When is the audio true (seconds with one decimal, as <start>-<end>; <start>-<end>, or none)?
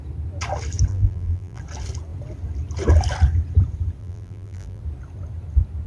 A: 0.0-0.9; 1.6-4.0; 4.8-5.9